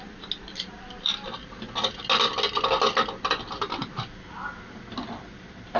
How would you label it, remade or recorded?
recorded